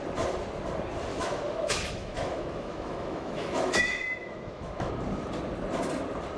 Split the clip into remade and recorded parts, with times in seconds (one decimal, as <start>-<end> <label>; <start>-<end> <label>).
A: 0.0-1.1 recorded; 1.1-4.9 remade; 4.9-6.4 recorded